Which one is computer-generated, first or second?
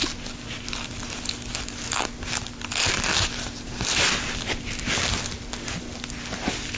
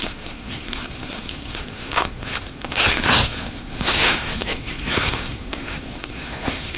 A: second